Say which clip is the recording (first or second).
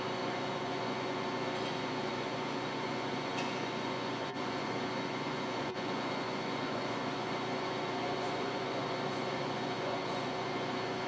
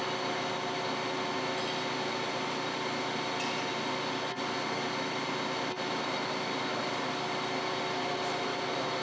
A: second